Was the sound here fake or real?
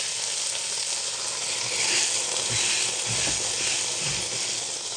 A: real